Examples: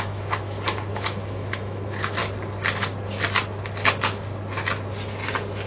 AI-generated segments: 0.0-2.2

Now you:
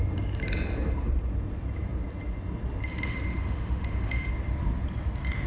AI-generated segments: 2.9-4.3